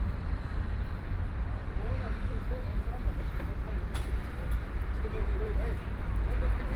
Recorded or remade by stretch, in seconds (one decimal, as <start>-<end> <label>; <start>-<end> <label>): 0.0-6.8 remade